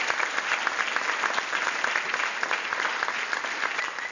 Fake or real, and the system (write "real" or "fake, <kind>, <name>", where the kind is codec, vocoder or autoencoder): real